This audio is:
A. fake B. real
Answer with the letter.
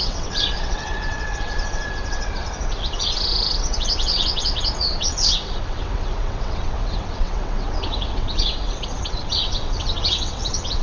A